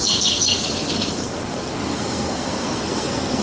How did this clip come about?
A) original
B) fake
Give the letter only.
B